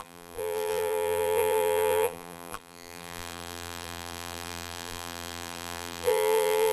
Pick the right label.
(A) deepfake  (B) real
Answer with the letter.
A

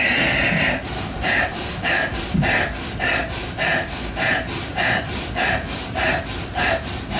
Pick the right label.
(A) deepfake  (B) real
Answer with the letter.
A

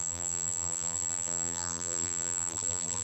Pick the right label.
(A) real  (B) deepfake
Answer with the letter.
B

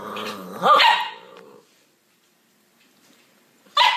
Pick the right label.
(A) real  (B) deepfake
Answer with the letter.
B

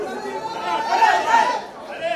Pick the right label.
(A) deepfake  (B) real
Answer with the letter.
B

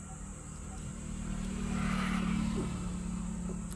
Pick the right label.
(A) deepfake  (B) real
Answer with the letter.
B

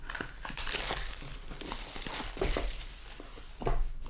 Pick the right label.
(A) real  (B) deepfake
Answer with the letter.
B